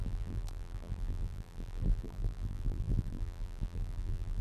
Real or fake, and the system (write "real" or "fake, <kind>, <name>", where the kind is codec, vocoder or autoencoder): fake, vocoder, BigVGAN v2